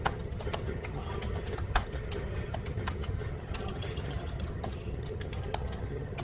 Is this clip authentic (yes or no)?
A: no